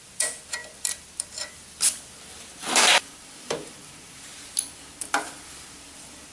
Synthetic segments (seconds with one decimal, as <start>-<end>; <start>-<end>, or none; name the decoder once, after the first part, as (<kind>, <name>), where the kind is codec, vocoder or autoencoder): 0.0-4.3 (vocoder, BigVGAN v2); 5.7-6.3

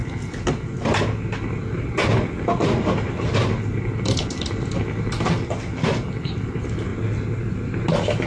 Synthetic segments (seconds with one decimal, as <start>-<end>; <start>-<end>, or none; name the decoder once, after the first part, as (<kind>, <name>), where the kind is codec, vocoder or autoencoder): none